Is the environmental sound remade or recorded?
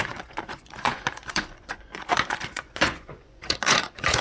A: remade